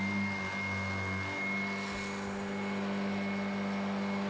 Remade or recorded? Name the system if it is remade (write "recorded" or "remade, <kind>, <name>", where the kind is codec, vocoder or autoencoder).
recorded